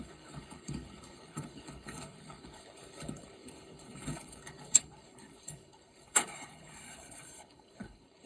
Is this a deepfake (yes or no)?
yes